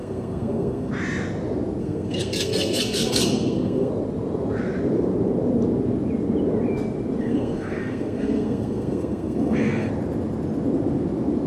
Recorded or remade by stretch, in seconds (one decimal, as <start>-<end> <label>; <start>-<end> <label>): 0.0-0.9 remade; 0.9-1.8 recorded; 1.8-3.9 remade; 3.9-7.2 recorded; 7.2-9.9 remade; 9.9-11.5 recorded